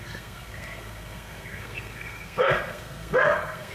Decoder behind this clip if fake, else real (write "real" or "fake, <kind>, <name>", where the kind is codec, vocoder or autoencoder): fake, codec, SNAC